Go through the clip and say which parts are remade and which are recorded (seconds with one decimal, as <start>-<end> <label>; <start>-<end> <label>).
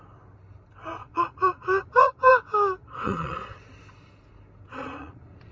0.0-1.0 recorded; 1.0-2.3 remade; 2.3-2.8 recorded; 2.8-3.6 remade; 3.6-4.7 recorded; 4.7-5.5 remade